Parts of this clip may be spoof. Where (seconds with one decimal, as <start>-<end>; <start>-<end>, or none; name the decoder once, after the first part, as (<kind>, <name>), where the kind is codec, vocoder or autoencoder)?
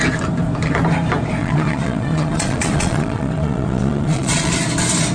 1.4-4.5 (vocoder, Vocos)